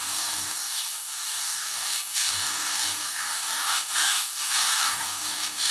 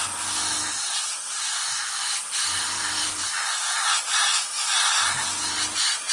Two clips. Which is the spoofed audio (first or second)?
first